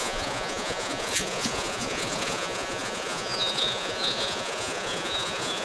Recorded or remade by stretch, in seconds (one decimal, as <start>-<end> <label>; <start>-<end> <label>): 0.0-5.6 remade